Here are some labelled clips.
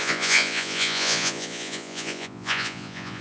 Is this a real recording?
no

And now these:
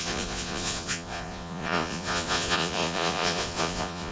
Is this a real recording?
no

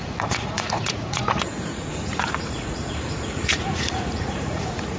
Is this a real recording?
no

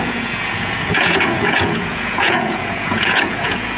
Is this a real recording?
no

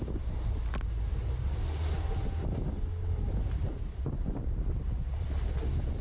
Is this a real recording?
yes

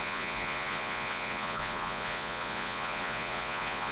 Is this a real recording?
no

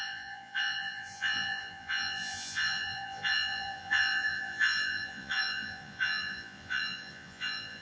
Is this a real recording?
no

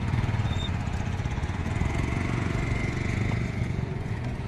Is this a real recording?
no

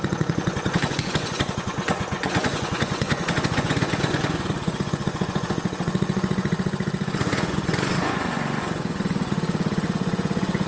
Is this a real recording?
no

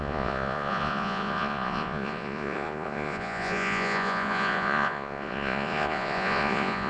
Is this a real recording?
no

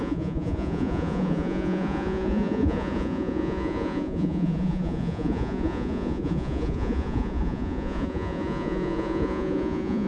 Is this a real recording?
no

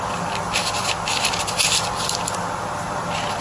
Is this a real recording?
yes